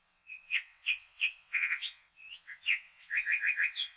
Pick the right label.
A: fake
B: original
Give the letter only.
A